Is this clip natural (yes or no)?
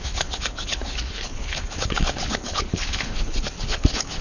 no